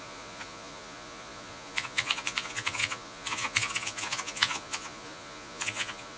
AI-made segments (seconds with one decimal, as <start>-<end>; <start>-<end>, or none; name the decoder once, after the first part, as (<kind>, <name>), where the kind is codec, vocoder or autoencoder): 0.0-6.2 (vocoder, Vocos)